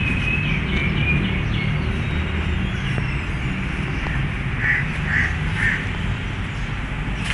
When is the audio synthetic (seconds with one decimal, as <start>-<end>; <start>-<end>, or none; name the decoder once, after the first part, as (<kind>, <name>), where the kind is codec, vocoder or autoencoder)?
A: none